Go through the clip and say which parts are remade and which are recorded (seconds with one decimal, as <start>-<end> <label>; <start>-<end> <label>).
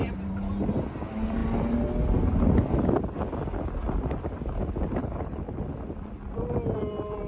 0.0-5.0 recorded; 5.0-5.6 remade; 5.6-7.3 recorded